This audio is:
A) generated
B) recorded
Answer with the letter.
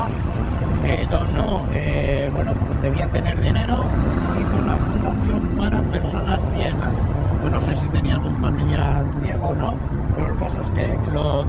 A